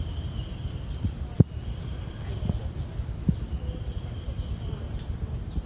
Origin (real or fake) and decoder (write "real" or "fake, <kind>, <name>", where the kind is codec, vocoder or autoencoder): real